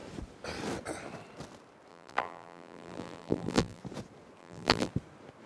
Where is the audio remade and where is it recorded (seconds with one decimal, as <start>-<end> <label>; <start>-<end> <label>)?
0.0-1.9 recorded; 1.9-3.8 remade; 3.8-4.4 recorded; 4.4-4.9 remade; 4.9-5.5 recorded